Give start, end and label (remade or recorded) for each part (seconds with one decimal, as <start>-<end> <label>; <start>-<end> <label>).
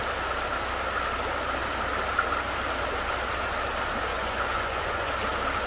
0.0-4.1 recorded; 4.1-5.1 remade; 5.1-5.7 recorded